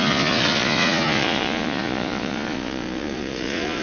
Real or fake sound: fake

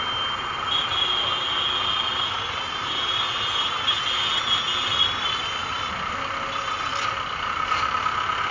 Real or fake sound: real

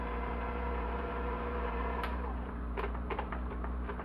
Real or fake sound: fake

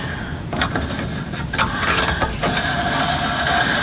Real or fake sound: real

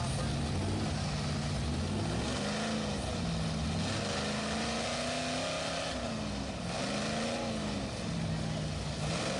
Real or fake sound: real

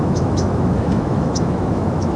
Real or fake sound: fake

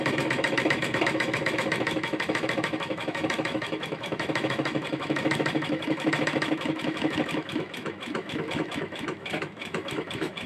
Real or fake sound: fake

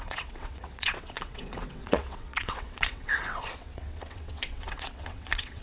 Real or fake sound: fake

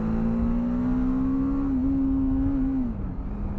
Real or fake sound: real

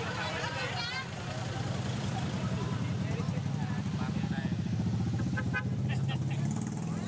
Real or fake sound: fake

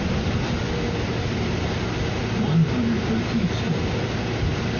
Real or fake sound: real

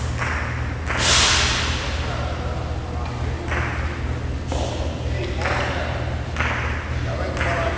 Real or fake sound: real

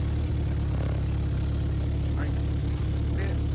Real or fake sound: real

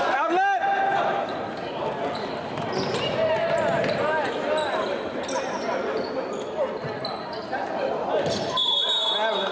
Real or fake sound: real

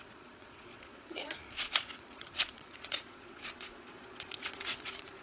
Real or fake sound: fake